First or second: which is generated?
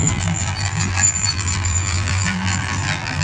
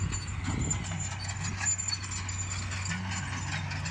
first